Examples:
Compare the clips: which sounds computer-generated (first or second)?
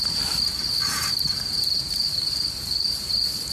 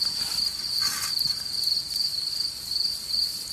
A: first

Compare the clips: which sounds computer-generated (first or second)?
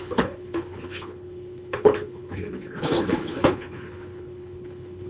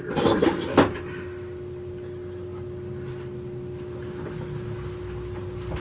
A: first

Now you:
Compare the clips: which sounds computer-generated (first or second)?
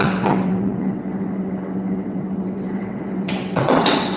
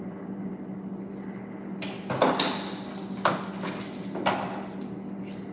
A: first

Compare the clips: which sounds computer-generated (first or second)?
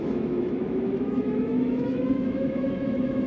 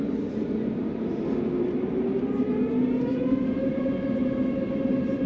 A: first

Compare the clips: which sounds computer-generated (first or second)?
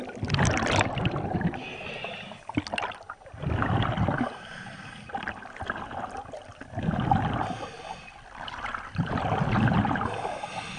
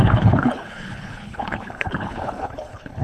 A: second